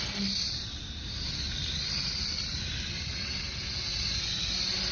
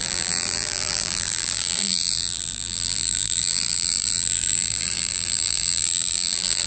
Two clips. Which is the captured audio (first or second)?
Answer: first